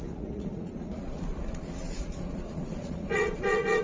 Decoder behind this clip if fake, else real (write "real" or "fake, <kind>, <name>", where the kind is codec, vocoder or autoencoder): fake, vocoder, Vocos